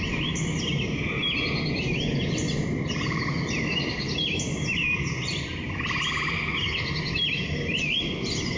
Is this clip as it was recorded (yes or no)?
yes